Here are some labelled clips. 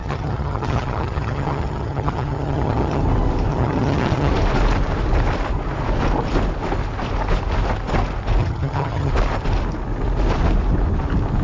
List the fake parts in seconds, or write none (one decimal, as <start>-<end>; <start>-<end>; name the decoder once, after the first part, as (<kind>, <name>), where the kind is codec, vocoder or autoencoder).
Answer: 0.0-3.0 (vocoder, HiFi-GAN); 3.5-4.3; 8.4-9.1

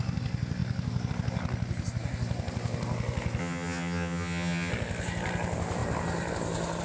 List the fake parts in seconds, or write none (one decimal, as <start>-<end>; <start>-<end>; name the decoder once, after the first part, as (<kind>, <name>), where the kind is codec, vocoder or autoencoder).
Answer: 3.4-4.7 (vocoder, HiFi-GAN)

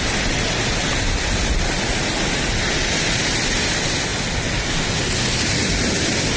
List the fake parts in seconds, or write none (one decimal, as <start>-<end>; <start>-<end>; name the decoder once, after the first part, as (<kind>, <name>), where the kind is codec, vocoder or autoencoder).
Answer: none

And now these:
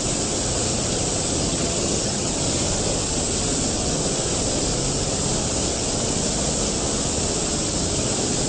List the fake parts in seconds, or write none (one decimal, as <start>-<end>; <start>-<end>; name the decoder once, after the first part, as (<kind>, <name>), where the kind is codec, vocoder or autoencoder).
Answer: 1.5-2.3 (vocoder, HiFi-GAN)